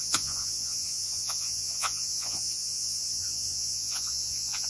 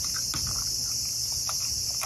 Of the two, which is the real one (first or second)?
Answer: second